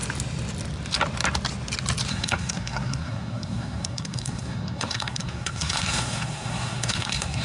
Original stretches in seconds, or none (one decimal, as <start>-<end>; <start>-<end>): 0.0-2.1